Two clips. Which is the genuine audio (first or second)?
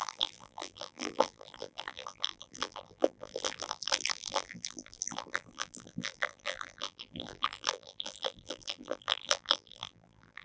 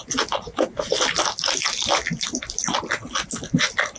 second